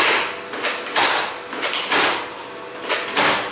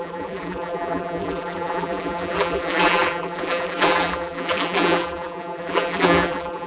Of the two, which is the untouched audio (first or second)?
first